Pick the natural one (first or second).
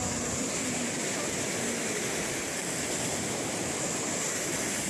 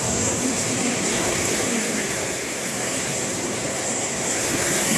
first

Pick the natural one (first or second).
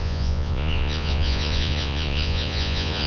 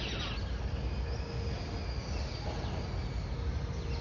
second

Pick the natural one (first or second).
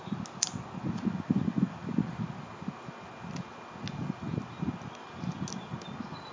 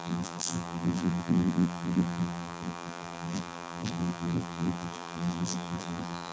first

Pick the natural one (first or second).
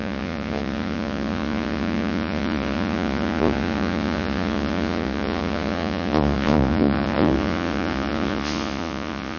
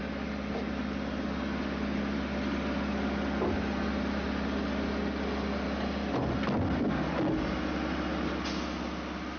second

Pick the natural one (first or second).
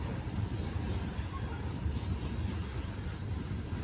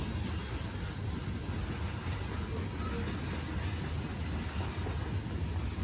second